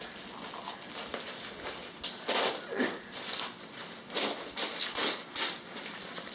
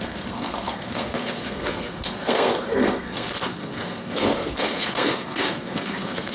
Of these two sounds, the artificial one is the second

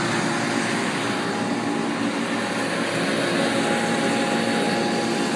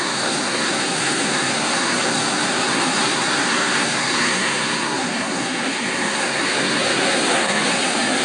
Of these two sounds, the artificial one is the second